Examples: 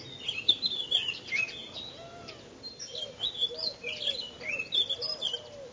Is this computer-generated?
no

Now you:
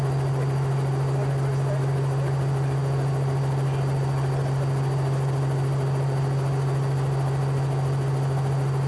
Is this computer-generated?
no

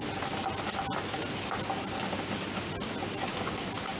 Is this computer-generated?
no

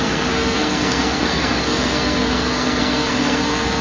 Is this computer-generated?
yes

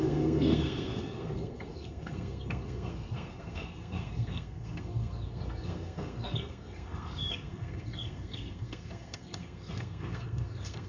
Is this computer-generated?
yes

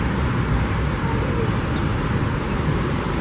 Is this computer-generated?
yes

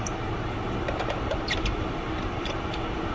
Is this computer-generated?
no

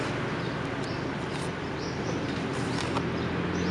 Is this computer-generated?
no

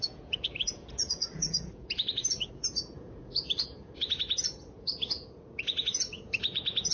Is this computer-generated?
yes